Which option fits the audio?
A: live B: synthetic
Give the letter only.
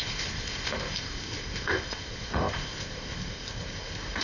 B